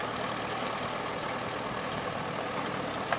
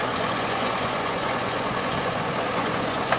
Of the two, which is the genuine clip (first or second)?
first